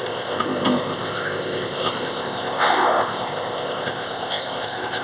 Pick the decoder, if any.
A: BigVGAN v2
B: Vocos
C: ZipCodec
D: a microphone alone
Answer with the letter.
C